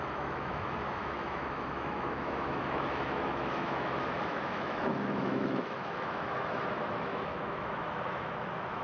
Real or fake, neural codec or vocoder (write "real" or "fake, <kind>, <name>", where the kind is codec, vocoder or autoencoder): fake, autoencoder, DAC-VAE